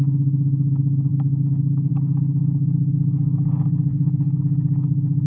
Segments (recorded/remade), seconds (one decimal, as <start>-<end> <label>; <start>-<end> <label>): 0.0-3.9 recorded; 3.9-4.4 remade; 4.4-5.3 recorded